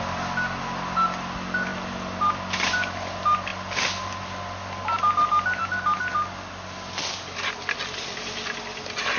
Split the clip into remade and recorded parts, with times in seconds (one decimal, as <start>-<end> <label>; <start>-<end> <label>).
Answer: 0.0-9.2 recorded